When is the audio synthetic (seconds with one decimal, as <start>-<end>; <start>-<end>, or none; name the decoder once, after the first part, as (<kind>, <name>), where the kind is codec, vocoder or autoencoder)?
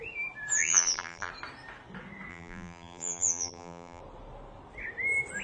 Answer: 0.6-1.3 (vocoder, BigVGAN v2); 2.3-4.0